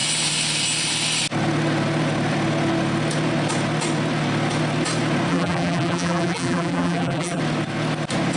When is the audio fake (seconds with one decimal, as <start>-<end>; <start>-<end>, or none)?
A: 5.3-7.4